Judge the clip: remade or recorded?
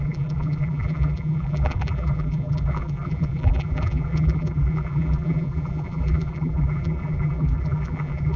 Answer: remade